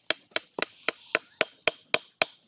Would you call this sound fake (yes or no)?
no